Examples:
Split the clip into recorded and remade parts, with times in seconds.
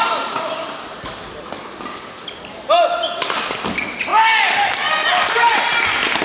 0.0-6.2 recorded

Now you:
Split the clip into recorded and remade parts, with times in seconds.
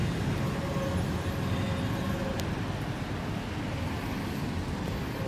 0.0-5.3 recorded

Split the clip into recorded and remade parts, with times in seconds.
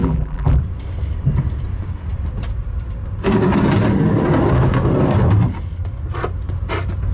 0.0-0.6 remade; 0.6-7.1 recorded